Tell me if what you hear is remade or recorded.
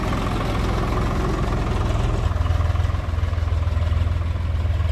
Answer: recorded